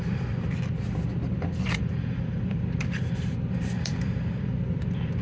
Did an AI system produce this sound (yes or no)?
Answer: yes